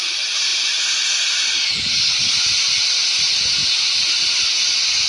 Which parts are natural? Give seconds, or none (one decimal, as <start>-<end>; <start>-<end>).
0.0-5.1